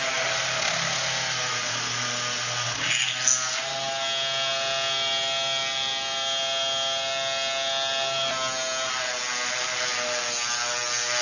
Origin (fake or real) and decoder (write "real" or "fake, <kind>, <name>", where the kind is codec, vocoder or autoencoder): real